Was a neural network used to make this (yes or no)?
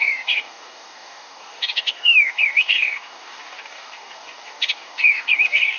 yes